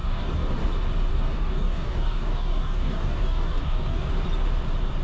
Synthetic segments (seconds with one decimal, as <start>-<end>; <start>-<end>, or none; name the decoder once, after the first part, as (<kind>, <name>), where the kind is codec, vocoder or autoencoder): 0.0-0.5 (codec, DAC); 1.1-4.1